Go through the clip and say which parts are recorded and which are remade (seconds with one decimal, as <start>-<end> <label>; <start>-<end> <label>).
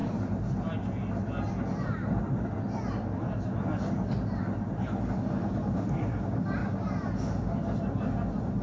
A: 0.0-8.6 recorded